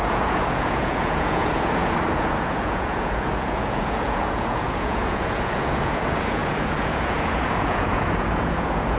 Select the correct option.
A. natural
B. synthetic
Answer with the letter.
B